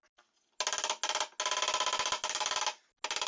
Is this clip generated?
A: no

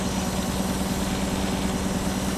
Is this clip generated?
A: no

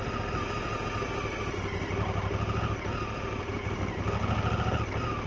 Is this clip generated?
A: no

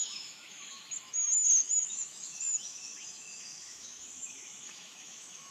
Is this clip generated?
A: yes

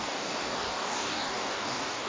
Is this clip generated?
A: yes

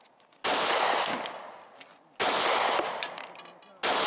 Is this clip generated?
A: no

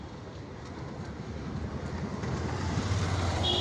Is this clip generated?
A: no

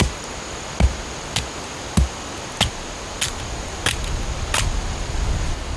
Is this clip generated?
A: no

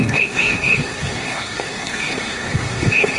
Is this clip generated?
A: yes